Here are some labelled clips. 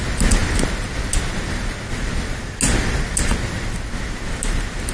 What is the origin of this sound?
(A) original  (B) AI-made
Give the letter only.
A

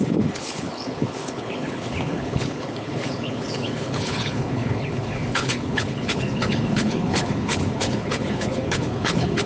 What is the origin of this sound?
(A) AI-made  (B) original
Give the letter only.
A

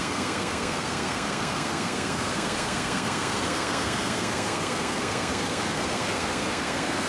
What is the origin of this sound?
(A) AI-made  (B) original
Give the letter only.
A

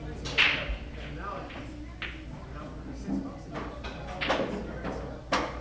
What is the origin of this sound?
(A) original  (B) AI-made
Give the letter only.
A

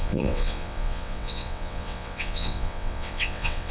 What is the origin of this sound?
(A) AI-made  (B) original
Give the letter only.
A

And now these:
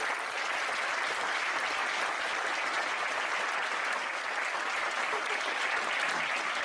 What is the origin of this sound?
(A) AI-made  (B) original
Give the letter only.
B